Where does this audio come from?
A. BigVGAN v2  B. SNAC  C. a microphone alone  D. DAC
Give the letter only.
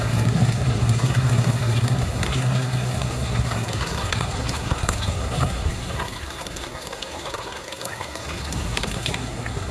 B